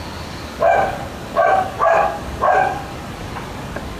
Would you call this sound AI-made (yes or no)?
yes